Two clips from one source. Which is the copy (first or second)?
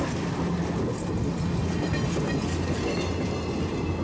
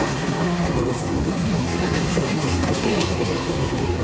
second